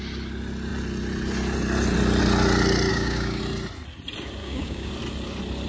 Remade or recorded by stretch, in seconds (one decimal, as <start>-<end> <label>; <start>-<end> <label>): 0.0-2.9 recorded; 2.9-3.4 remade; 3.4-4.4 recorded; 4.4-4.9 remade; 4.9-5.7 recorded